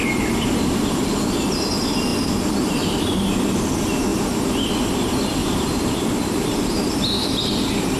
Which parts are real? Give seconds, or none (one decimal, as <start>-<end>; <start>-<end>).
0.0-2.1; 3.6-4.1; 4.8-5.4; 6.9-8.0